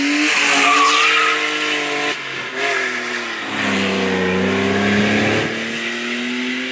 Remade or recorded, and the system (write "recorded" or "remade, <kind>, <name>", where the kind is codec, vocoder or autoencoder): recorded